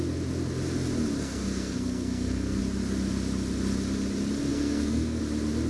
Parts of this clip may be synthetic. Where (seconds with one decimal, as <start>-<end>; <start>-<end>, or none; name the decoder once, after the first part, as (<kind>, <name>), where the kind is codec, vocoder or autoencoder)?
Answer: 1.2-2.6 (codec, SNAC); 4.5-5.2